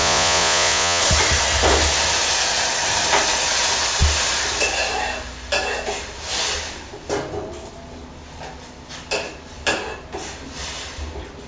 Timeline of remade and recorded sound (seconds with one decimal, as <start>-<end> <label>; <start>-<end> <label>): 0.0-1.0 remade; 1.0-11.5 recorded